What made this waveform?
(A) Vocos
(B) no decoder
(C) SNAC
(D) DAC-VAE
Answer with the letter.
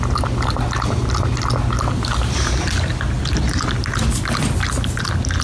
B